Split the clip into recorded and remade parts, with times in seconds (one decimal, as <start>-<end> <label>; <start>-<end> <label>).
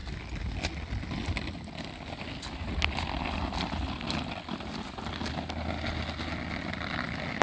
0.0-7.4 recorded